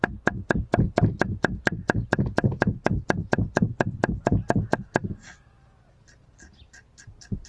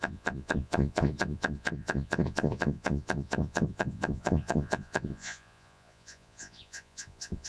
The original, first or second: first